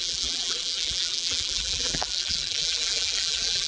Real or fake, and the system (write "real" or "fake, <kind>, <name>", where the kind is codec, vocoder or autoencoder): fake, vocoder, BigVGAN v2